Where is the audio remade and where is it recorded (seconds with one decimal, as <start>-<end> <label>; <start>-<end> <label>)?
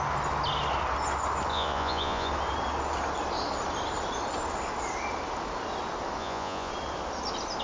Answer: 0.0-1.5 recorded; 1.5-2.3 remade; 2.3-6.2 recorded; 6.2-6.7 remade; 6.7-7.6 recorded